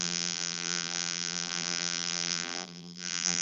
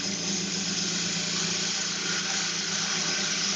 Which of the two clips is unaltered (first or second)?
second